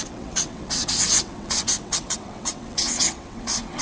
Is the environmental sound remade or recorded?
remade